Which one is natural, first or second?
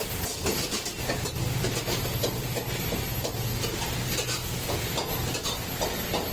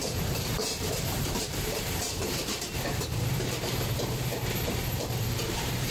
first